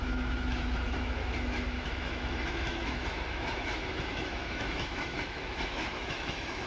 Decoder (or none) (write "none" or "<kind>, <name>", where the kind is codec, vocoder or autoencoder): autoencoder, DAC-VAE